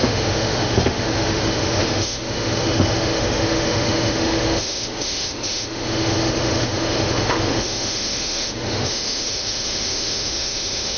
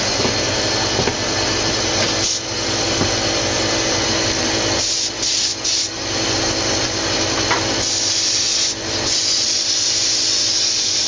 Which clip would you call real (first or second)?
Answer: second